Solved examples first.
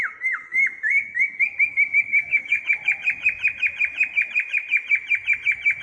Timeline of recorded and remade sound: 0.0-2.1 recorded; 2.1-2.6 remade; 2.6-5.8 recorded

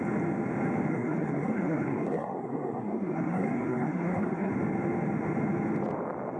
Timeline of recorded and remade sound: 0.0-0.9 recorded; 0.9-4.5 remade; 4.5-6.4 recorded

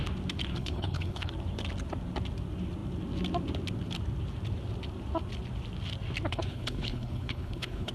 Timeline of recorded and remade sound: 0.0-0.5 recorded; 0.5-1.3 remade; 1.3-6.3 recorded; 6.3-7.9 remade

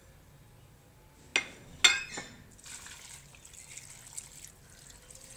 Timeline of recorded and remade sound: 0.0-5.4 recorded

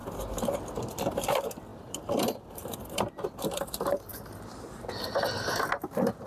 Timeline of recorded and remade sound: 0.0-0.9 recorded; 0.9-4.1 remade; 4.1-6.3 recorded

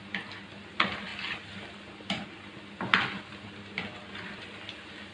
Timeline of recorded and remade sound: 0.0-5.1 recorded

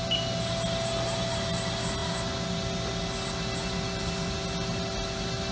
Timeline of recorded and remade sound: 0.0-5.5 recorded

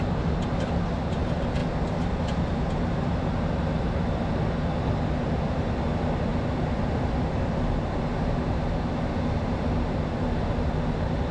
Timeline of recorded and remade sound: 0.0-6.3 recorded; 6.3-7.3 remade; 7.3-11.3 recorded